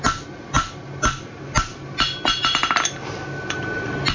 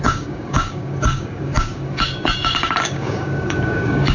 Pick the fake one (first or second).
second